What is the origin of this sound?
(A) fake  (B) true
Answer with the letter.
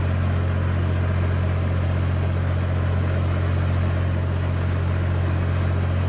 B